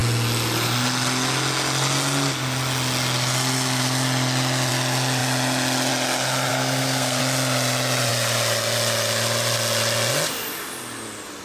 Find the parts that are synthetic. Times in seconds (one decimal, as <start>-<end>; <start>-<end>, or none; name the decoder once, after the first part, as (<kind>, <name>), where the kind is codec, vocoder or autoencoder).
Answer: 6.5-7.2 (codec, SNAC)